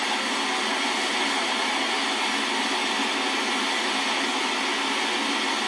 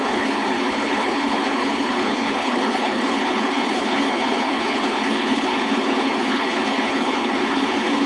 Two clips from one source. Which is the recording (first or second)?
first